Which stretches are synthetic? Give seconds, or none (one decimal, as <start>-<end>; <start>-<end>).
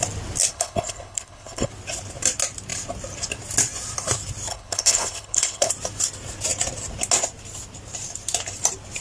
0.5-1.7; 4.5-5.7